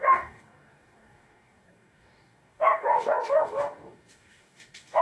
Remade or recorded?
remade